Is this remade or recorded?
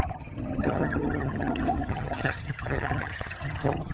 remade